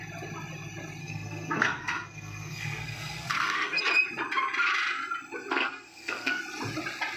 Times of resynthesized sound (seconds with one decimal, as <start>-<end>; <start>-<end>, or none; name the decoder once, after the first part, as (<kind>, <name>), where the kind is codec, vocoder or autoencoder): 1.0-3.8 (codec, SNAC); 5.5-6.4